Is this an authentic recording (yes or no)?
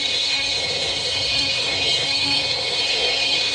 no